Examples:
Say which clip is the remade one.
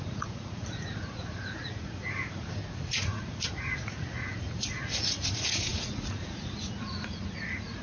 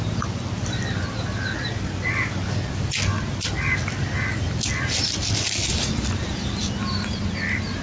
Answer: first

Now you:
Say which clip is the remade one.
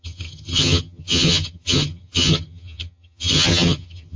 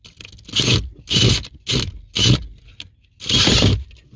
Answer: first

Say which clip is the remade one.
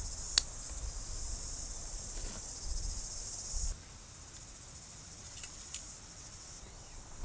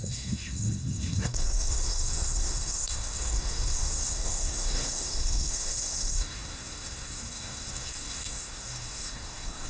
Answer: second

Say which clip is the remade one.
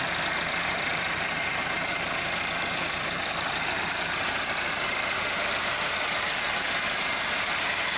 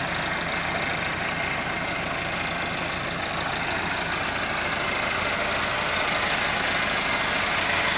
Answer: first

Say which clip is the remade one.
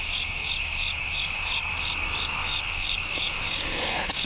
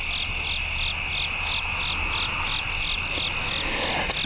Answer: first